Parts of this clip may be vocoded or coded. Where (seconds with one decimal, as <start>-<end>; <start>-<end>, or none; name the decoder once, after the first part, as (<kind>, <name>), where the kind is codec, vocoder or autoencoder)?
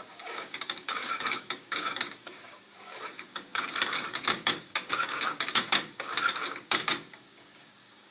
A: 0.0-8.1 (codec, DAC)